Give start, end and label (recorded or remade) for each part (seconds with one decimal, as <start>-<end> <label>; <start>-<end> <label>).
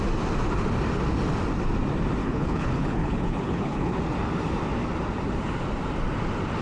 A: 0.0-2.2 recorded; 2.2-4.0 remade; 4.0-6.6 recorded